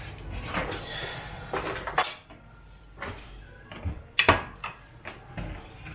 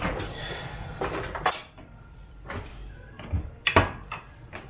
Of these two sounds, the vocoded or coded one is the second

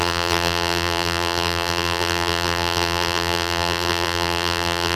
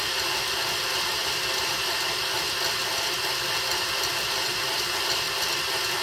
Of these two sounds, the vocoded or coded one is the first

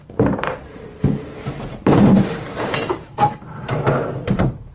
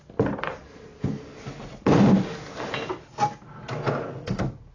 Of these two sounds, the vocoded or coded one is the first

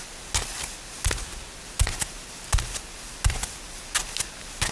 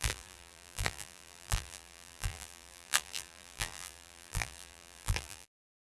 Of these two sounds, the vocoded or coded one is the second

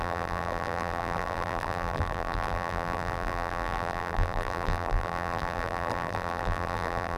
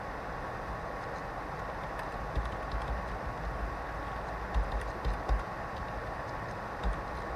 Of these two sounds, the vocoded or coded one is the first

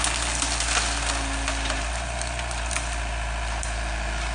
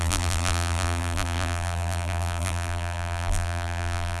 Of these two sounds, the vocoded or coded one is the second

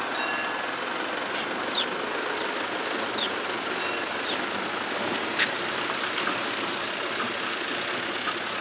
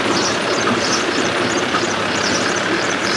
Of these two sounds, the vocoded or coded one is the second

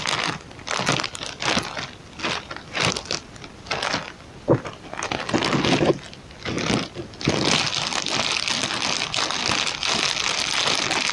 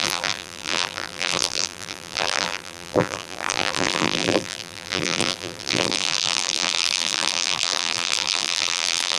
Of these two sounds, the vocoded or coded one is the second